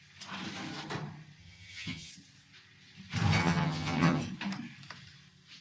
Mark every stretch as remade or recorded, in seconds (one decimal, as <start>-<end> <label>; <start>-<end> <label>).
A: 0.0-1.4 recorded; 1.4-2.1 remade; 2.1-3.4 recorded; 3.4-4.2 remade; 4.2-5.6 recorded